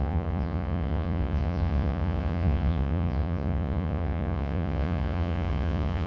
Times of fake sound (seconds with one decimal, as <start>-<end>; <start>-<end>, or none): 0.0-6.1